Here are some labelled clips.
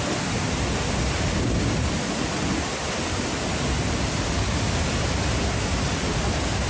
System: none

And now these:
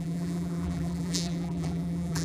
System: vocoder, BigVGAN v2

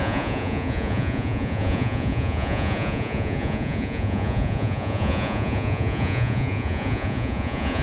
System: vocoder, Vocos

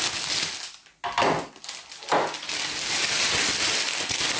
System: none